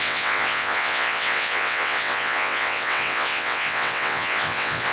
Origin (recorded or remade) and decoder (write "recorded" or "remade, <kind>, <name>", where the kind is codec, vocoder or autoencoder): remade, vocoder, WaveNeXt